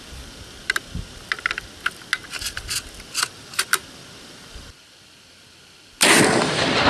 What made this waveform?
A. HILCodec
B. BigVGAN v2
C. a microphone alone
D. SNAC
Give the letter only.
C